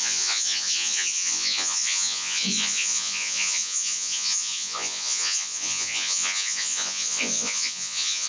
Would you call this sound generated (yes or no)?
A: yes